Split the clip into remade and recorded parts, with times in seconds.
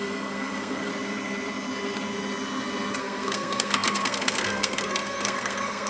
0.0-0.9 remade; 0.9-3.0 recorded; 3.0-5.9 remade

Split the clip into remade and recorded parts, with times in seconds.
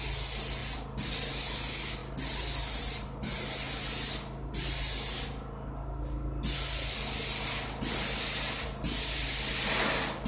0.0-10.3 recorded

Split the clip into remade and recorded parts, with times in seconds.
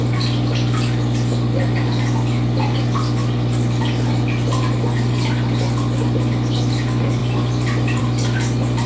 0.0-8.9 recorded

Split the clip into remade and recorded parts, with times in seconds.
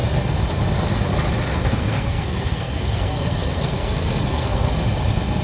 0.0-1.5 recorded; 1.5-4.7 remade; 4.7-5.4 recorded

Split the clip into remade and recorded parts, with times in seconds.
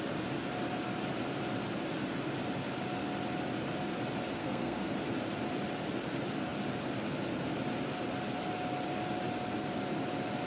0.0-4.4 recorded; 4.4-4.9 remade; 4.9-10.5 recorded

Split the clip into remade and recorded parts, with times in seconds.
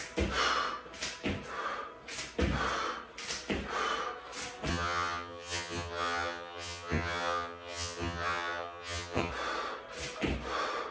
0.0-4.7 recorded; 4.7-9.3 remade; 9.3-10.9 recorded